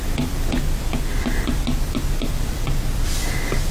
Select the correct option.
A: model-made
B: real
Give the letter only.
B